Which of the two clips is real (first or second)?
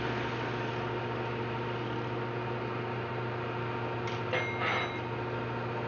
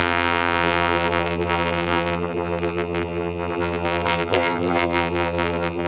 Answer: first